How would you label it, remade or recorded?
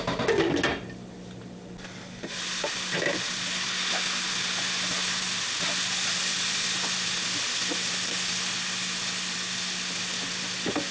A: recorded